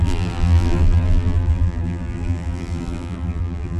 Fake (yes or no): yes